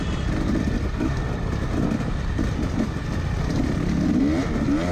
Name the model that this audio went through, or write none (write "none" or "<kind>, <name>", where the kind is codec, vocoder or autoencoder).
none